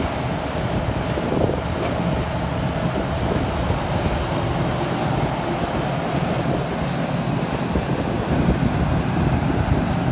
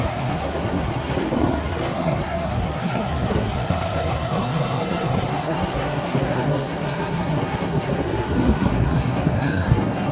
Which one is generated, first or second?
second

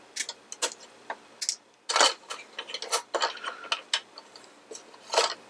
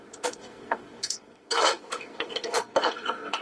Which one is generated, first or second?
second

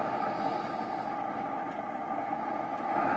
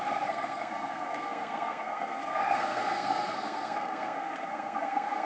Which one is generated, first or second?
second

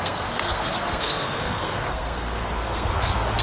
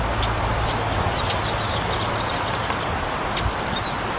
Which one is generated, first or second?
first